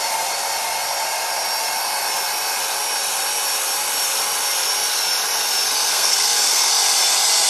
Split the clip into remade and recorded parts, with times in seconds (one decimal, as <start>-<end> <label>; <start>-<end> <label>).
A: 0.0-5.9 recorded; 5.9-6.7 remade; 6.7-7.5 recorded